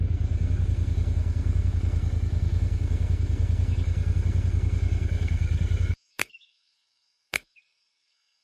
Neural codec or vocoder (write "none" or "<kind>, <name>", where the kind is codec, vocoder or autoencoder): codec, SNAC